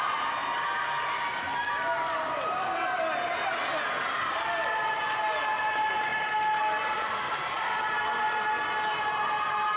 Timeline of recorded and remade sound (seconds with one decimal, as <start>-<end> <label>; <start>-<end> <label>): 0.0-9.8 recorded